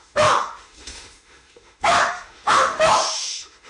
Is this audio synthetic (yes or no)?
yes